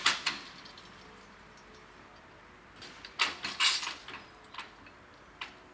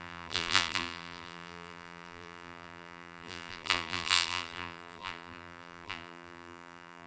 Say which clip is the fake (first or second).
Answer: second